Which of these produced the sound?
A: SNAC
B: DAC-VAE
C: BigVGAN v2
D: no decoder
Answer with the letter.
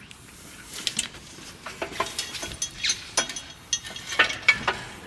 D